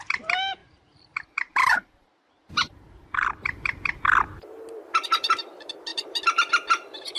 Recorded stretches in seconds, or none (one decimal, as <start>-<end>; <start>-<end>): 0.0-0.6; 4.0-5.9